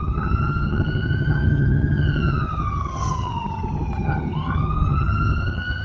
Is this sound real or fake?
fake